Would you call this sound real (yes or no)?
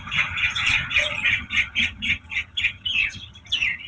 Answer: no